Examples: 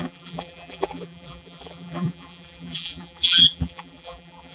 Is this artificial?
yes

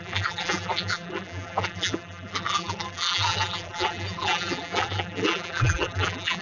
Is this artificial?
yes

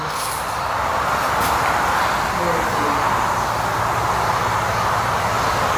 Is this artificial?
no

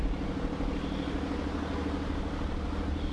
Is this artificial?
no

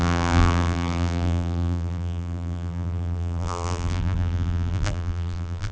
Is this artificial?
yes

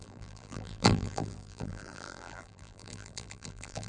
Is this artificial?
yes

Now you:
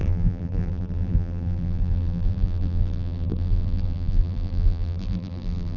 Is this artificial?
yes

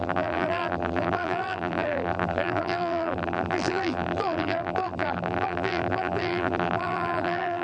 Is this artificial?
yes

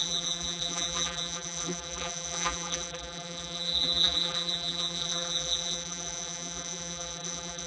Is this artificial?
yes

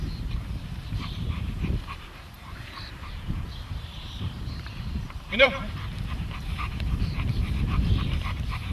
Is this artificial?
yes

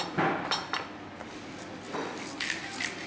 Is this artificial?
no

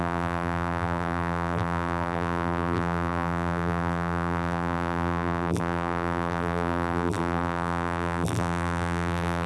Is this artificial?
yes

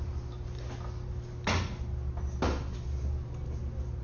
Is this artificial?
no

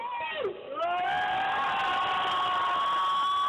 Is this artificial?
no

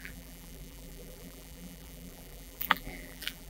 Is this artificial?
yes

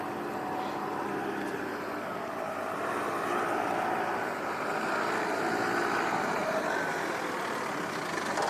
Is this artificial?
no